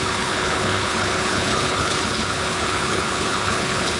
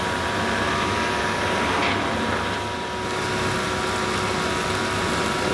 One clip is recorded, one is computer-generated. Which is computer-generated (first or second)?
first